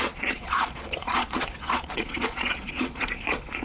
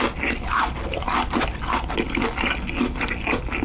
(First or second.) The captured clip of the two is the second